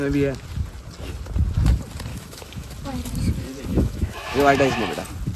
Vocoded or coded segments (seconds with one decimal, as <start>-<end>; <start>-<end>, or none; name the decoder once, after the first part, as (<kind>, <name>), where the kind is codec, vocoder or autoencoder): 2.1-2.7 (autoencoder, DAC-VAE); 3.7-4.8